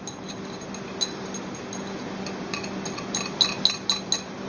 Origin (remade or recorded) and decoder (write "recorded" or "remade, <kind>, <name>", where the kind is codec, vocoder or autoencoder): recorded